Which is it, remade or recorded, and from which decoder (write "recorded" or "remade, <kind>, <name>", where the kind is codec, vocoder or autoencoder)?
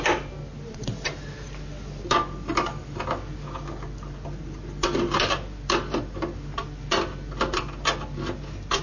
recorded